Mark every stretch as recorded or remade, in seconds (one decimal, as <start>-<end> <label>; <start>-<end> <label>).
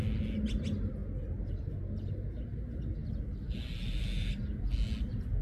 0.0-5.4 recorded